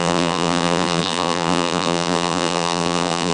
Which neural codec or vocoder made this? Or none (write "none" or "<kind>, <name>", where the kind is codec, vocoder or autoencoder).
vocoder, BigVGAN v2